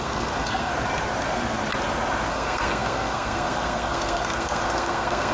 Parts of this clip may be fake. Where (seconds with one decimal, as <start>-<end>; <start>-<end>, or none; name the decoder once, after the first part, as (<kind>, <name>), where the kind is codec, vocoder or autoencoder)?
0.0-0.7 (codec, SNAC); 2.3-5.3